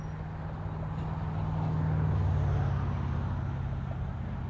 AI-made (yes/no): no